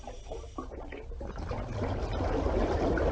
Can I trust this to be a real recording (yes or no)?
yes